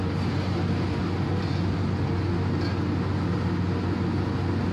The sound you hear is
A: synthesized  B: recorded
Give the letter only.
B